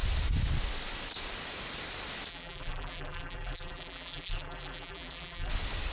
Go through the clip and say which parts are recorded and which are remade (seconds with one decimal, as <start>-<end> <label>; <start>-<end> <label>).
0.0-2.3 recorded; 2.3-5.5 remade; 5.5-5.9 recorded